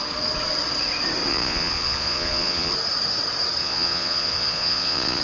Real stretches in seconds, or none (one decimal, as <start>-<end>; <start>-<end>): 0.0-1.3; 2.7-3.6